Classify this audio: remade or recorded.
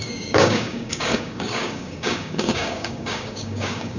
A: remade